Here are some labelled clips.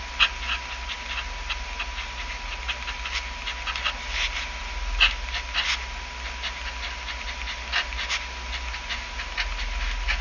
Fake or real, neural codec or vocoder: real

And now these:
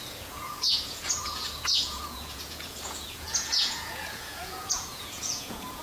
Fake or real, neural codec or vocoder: fake, vocoder, Vocos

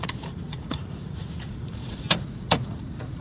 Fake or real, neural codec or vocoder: fake, vocoder, Vocos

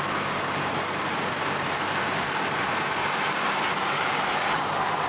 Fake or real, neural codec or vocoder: real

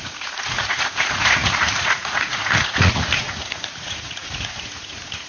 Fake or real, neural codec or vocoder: fake, vocoder, Vocos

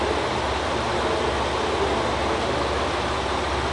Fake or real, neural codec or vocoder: real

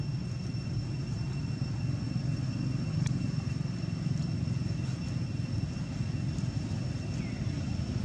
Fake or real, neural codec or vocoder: real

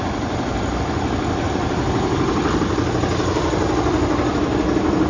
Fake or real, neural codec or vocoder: real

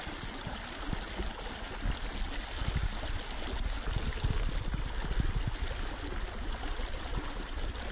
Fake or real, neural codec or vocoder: real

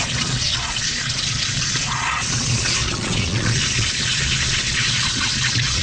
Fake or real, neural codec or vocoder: fake, vocoder, Vocos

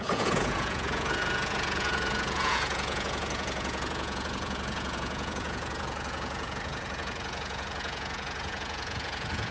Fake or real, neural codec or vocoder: fake, vocoder, Vocos